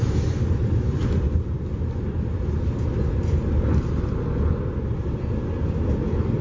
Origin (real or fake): real